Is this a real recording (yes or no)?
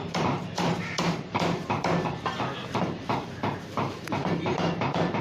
no